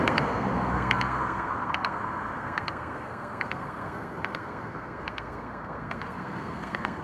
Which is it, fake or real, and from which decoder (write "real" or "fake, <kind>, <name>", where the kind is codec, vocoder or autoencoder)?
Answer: fake, codec, SNAC